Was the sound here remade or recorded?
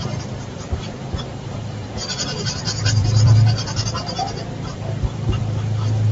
remade